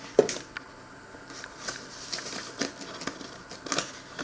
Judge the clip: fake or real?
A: real